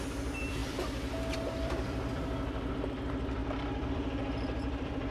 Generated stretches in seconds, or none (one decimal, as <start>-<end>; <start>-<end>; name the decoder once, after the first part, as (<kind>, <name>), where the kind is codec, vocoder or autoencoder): 0.0-5.1 (vocoder, BigVGAN v2)